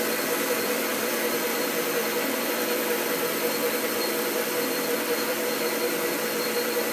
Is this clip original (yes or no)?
no